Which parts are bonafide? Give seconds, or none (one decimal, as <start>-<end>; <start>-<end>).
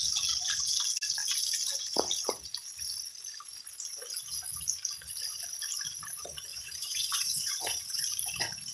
0.0-6.5; 8.0-8.7